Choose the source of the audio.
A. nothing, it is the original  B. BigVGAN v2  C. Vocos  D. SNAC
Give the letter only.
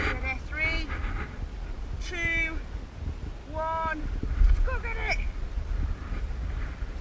A